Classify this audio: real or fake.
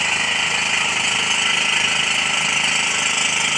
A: real